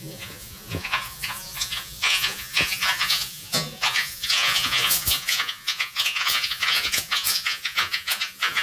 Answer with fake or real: fake